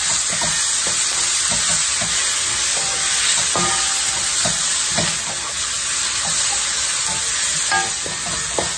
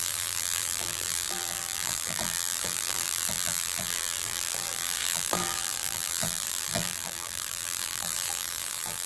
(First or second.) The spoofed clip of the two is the second